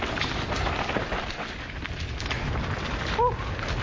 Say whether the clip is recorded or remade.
recorded